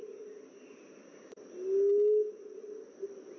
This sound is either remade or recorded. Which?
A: recorded